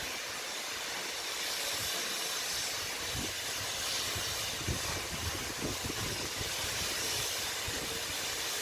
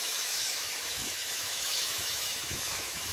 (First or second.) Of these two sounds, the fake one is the second